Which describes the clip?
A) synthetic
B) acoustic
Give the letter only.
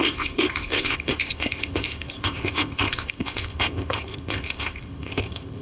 A